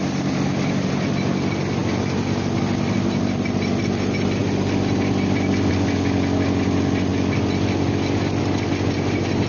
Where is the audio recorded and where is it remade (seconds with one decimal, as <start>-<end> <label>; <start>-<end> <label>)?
0.0-9.5 recorded